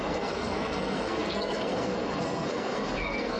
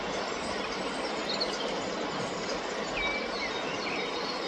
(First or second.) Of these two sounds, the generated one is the first